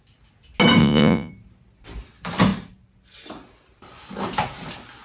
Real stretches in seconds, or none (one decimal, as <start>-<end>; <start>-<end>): 0.0-0.8; 1.3-5.0